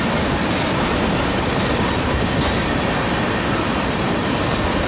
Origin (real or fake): real